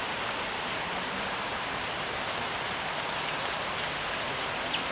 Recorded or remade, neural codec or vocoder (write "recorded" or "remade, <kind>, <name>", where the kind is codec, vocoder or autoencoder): recorded